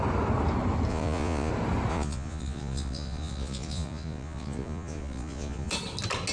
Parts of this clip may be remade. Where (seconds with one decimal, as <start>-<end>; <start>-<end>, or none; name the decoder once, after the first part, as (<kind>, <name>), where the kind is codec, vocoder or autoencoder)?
0.9-1.5 (vocoder, Vocos); 1.9-5.7